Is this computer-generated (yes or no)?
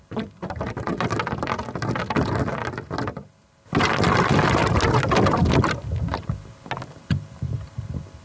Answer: no